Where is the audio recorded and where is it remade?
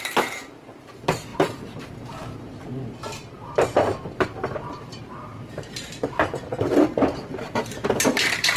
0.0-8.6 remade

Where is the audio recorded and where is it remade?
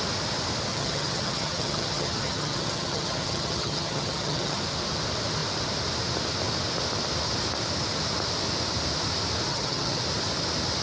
0.0-0.7 recorded; 0.7-4.6 remade; 4.6-9.5 recorded; 9.5-10.0 remade; 10.0-10.8 recorded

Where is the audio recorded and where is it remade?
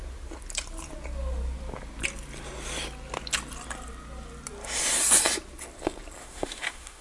0.0-6.2 recorded; 6.2-7.0 remade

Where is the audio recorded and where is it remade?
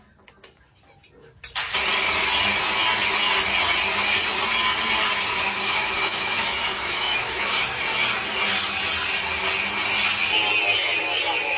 0.0-5.3 recorded; 5.3-7.8 remade; 7.8-11.6 recorded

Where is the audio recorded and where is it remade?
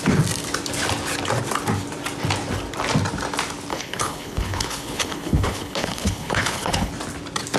0.0-3.7 recorded; 3.7-6.9 remade; 6.9-7.6 recorded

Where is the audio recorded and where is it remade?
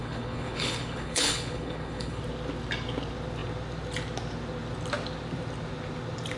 0.0-2.2 remade; 2.2-6.4 recorded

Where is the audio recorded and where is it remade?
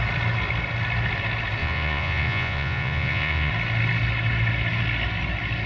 0.0-1.6 recorded; 1.6-3.5 remade; 3.5-5.7 recorded